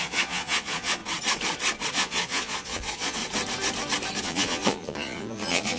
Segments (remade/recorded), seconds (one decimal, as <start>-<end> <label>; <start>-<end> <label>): 0.0-1.0 remade; 1.0-1.9 recorded; 1.9-3.2 remade; 3.2-4.2 recorded; 4.2-5.8 remade